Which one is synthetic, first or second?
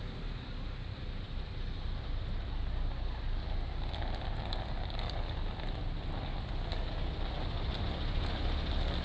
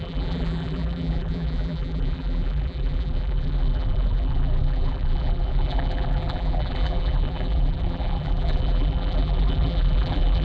second